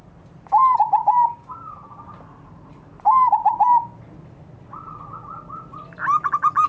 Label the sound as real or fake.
real